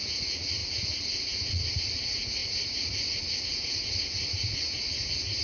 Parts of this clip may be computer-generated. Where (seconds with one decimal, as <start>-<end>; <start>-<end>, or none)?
0.0-5.4